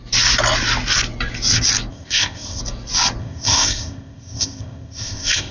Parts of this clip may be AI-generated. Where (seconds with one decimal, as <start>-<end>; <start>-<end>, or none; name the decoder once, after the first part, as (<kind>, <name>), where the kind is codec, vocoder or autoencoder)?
1.9-2.6 (codec, ZipCodec); 3.2-5.5